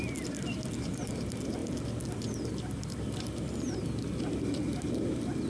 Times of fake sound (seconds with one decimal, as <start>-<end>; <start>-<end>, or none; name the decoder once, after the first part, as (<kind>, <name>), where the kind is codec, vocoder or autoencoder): 1.6-4.9 (vocoder, BigVGAN v2)